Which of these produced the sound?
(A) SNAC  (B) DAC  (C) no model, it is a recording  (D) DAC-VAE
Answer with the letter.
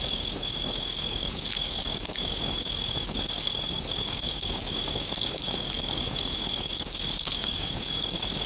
B